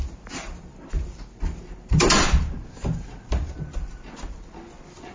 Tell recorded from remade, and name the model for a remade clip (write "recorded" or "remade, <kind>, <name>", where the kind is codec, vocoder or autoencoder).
recorded